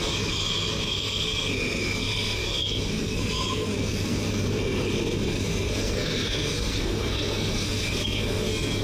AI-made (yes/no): yes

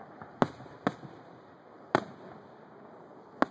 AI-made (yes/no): no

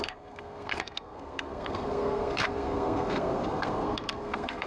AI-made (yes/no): yes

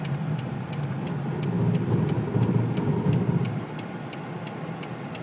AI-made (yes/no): no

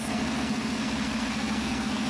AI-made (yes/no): yes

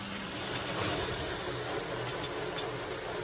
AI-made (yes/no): no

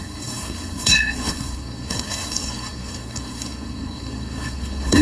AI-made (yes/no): yes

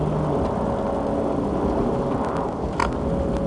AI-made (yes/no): no